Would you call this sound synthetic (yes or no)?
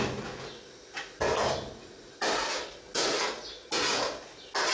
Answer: no